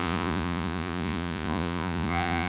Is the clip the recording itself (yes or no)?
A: no